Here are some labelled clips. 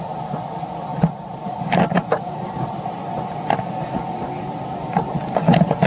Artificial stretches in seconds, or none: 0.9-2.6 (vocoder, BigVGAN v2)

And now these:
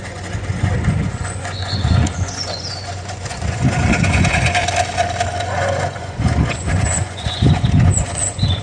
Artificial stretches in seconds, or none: 0.0-4.6 (vocoder, Vocos); 5.4-8.6

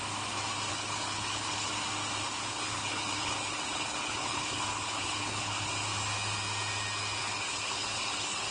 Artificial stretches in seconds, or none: 0.7-1.7 (codec, HILCodec); 2.5-5.7; 7.2-8.5

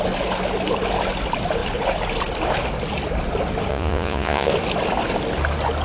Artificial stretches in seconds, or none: 3.7-4.5 (vocoder, Vocos)